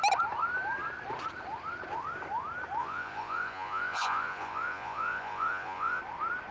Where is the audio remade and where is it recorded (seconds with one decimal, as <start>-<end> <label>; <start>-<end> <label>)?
0.0-2.8 recorded; 2.8-6.0 remade; 6.0-6.5 recorded